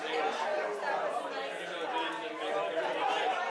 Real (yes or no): yes